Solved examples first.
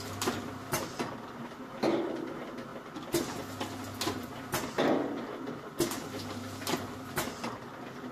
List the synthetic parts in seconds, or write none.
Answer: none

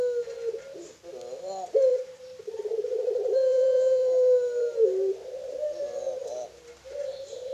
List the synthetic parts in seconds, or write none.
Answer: 1.9-2.4 (vocoder, BigVGAN v2); 2.9-5.1

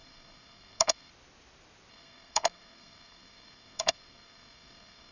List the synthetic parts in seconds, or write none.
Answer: 0.0-1.1 (codec, SNAC); 1.9-5.1

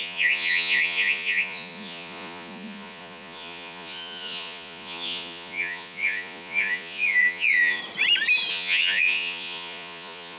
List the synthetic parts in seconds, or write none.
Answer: 0.0-7.8 (vocoder, Vocos); 8.5-10.4